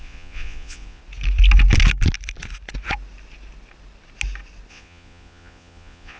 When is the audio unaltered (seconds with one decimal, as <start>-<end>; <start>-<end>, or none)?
1.0-4.7